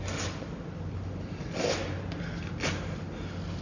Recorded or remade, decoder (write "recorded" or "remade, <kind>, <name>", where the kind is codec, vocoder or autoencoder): recorded